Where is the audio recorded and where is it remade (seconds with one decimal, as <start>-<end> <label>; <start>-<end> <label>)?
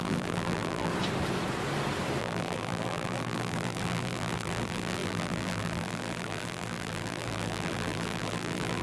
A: 0.0-0.9 remade; 0.9-2.2 recorded; 2.2-8.8 remade